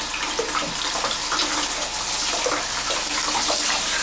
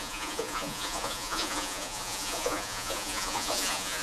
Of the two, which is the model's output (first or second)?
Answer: second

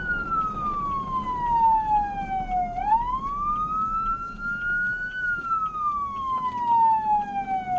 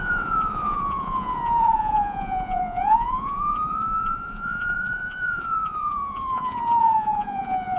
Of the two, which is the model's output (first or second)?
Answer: second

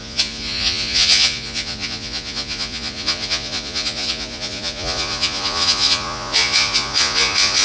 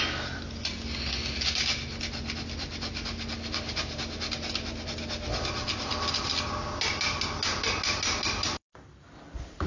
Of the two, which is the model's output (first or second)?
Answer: first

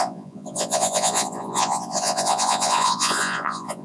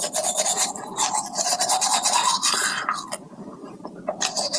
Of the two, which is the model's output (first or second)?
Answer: first